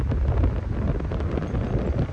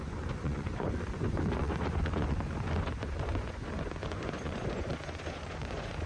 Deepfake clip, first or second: second